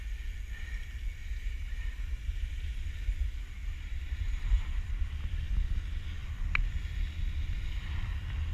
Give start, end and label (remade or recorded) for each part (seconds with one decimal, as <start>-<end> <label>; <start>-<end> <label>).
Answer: 0.0-1.2 recorded; 1.2-2.9 remade; 2.9-3.6 recorded; 3.6-5.0 remade; 5.0-8.5 recorded

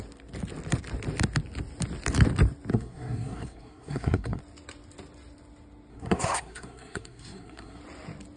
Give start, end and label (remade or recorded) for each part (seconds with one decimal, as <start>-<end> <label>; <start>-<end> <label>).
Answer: 0.0-2.7 recorded; 2.7-4.4 remade; 4.4-5.9 recorded; 5.9-7.8 remade; 7.8-8.4 recorded

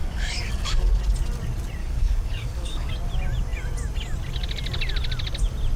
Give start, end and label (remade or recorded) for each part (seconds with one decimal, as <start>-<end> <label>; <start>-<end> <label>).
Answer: 0.0-1.0 remade; 1.0-1.8 recorded; 1.8-2.9 remade; 2.9-5.8 recorded

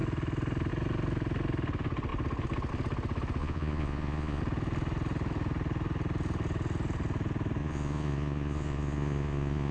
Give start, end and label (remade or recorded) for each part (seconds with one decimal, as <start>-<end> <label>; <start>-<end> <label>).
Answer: 0.0-3.4 recorded; 3.4-4.4 remade; 4.4-7.6 recorded; 7.6-9.7 remade

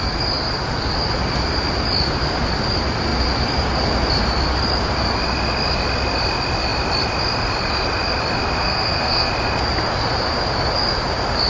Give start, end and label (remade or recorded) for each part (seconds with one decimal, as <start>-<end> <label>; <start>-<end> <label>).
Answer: 0.0-8.6 recorded; 8.6-9.3 remade; 9.3-11.5 recorded